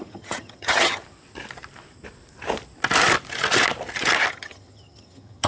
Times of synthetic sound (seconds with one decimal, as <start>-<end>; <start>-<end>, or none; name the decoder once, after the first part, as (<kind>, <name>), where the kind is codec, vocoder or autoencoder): 0.0-1.0 (vocoder, HiFi-GAN); 4.3-5.5